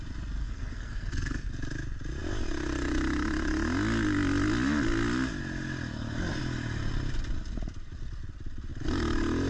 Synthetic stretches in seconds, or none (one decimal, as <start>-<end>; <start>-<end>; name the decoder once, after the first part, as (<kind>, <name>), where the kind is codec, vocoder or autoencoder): 0.4-1.5 (codec, SNAC)